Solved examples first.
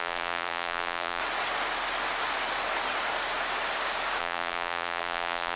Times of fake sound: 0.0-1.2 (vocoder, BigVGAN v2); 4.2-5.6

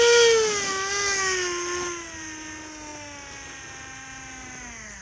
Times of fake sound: none

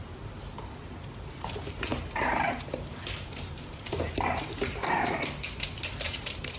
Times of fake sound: 0.0-6.6 (vocoder, BigVGAN v2)

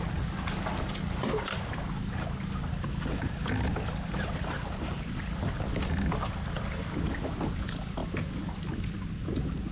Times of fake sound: none